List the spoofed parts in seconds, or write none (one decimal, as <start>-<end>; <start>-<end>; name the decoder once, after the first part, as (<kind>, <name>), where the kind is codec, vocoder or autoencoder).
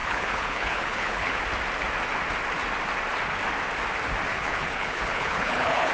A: 0.0-1.4 (codec, HILCodec); 4.3-5.9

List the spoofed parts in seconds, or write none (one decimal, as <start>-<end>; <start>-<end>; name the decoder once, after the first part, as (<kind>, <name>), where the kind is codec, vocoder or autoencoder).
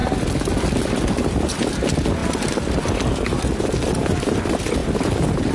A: none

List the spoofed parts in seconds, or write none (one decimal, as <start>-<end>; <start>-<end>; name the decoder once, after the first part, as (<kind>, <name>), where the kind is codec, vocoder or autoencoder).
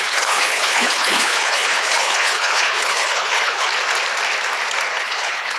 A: 0.0-3.7 (codec, HILCodec); 4.9-5.6